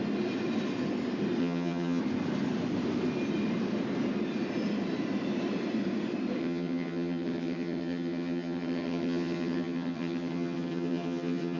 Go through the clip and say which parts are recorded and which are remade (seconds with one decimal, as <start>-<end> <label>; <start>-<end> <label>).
0.0-1.4 recorded; 1.4-2.0 remade; 2.0-6.4 recorded; 6.4-11.6 remade